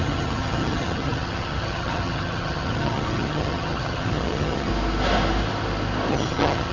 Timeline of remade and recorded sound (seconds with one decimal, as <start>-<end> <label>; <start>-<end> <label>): 0.0-4.7 remade; 4.7-6.1 recorded; 6.1-6.7 remade